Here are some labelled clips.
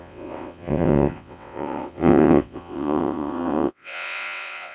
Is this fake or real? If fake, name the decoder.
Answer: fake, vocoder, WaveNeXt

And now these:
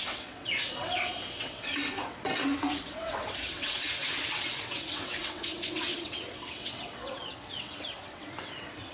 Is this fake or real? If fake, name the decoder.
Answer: fake, vocoder, WaveNeXt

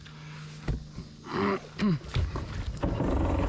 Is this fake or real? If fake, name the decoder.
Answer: real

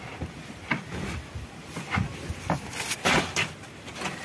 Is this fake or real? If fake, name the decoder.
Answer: real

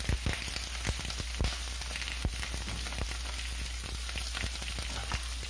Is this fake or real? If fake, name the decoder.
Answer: real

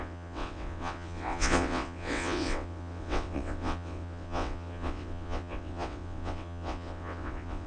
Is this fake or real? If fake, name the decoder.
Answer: fake, vocoder, WaveNeXt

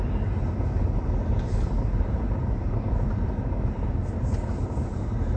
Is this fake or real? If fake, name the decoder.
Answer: real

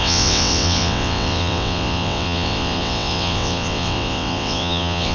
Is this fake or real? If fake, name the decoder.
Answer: fake, vocoder, WaveNeXt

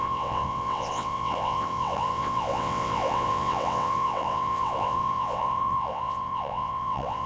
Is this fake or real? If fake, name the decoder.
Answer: fake, vocoder, WaveNeXt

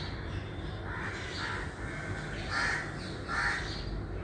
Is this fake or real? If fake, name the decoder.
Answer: real